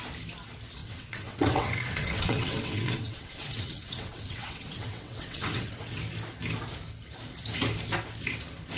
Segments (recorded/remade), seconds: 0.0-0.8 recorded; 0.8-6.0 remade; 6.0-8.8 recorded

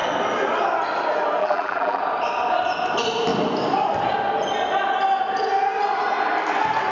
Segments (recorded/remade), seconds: 0.0-1.4 recorded; 1.4-2.0 remade; 2.0-6.9 recorded

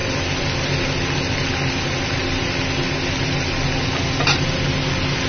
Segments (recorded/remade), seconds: 0.0-5.3 recorded